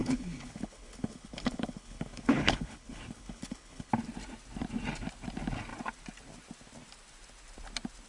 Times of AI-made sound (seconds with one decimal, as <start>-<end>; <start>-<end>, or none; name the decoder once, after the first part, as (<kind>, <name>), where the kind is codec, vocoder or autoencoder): 0.0-3.9 (codec, HILCodec)